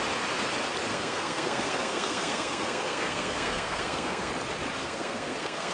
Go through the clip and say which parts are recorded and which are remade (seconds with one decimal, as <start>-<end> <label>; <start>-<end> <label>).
0.0-0.9 recorded; 0.9-4.3 remade; 4.3-4.8 recorded; 4.8-5.7 remade